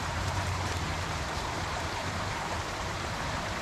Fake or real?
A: fake